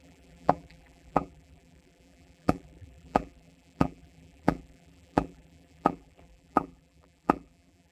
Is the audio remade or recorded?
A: remade